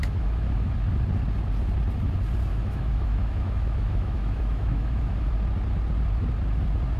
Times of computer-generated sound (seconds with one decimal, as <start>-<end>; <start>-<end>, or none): 0.0-0.7; 2.5-5.3